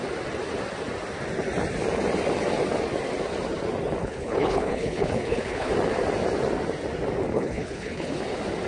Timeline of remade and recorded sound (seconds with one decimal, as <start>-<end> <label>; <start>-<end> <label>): 0.0-4.0 recorded; 4.0-5.7 remade; 5.7-7.3 recorded; 7.3-8.2 remade; 8.2-8.7 recorded